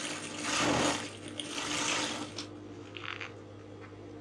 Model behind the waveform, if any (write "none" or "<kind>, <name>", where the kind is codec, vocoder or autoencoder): none